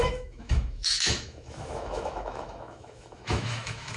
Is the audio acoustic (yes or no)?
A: no